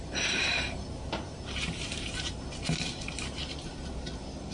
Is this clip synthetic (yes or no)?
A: yes